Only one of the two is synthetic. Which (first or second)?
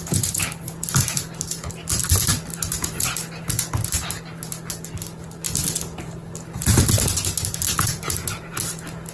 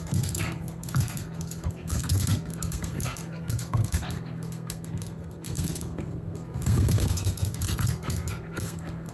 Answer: second